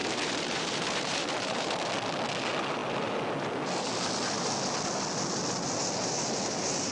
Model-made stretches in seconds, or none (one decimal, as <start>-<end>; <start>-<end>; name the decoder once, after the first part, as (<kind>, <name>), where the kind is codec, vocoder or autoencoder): 0.0-1.9 (vocoder, BigVGAN v2)